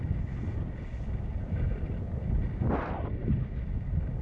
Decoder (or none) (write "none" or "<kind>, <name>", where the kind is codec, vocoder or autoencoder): none